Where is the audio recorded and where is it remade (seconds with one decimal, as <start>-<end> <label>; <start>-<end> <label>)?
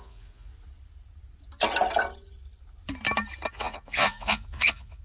0.0-0.5 remade; 0.5-3.5 recorded; 3.5-5.0 remade